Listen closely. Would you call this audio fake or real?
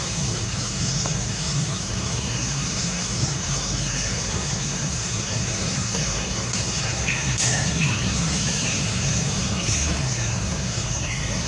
fake